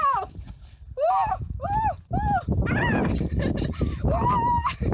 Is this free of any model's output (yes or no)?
yes